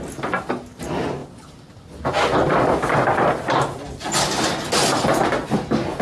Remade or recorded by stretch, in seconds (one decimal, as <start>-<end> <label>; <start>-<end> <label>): 0.0-6.0 recorded